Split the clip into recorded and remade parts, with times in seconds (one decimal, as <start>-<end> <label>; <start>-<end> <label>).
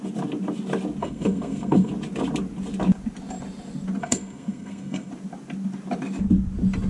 0.0-1.0 recorded; 1.0-1.9 remade; 1.9-4.0 recorded; 4.0-5.1 remade; 5.1-6.9 recorded